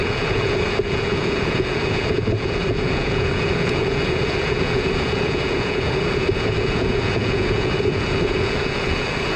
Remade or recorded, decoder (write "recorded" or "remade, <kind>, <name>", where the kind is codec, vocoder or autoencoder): remade, vocoder, Vocos